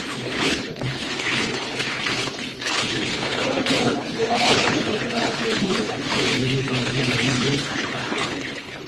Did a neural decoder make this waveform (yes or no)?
yes